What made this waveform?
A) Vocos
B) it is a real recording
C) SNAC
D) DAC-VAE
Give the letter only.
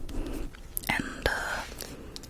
B